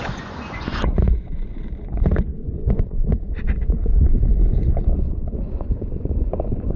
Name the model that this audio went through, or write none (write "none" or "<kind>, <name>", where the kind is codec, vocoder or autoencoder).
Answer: vocoder, Vocos